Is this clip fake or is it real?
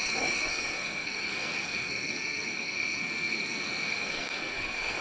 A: fake